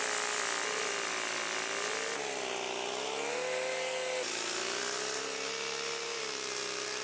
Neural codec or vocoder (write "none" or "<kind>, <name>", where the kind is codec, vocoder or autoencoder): none